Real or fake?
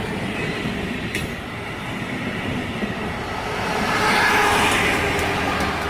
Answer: real